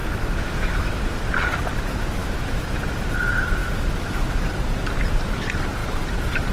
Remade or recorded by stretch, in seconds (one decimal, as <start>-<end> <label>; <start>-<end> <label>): 0.0-1.0 remade; 1.0-2.2 recorded; 2.2-2.8 remade; 2.8-3.6 recorded; 3.6-4.5 remade; 4.5-6.5 recorded